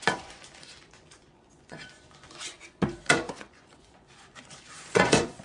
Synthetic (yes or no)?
yes